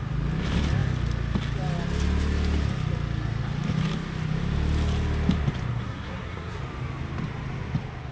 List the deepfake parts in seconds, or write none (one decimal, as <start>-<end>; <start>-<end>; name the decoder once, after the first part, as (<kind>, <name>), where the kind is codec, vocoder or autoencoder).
5.7-6.6 (codec, SNAC)